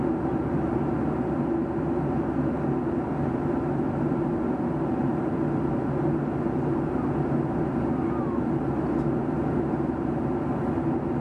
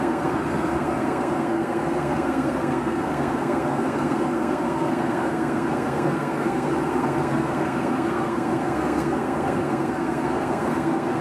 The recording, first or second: first